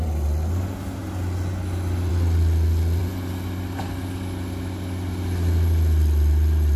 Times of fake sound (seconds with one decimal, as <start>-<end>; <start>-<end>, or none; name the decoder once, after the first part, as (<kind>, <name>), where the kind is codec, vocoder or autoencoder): none